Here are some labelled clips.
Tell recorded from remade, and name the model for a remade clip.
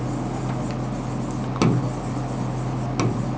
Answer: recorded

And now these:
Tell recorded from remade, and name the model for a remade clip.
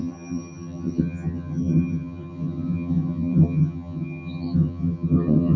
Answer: remade, vocoder, HiFi-GAN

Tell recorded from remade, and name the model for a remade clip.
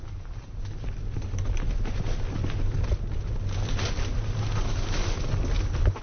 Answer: recorded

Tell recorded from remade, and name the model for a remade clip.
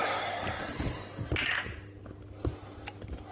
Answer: recorded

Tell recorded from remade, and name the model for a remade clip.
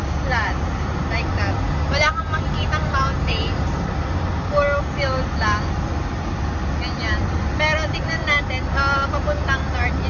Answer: recorded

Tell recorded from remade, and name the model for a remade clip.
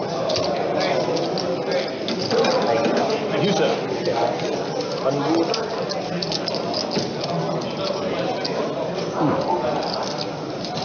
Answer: recorded